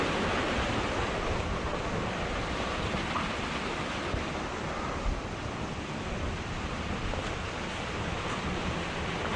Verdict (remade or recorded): remade